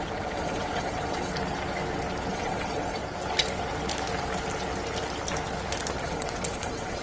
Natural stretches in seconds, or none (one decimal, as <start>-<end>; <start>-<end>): 1.3-2.3; 3.0-6.0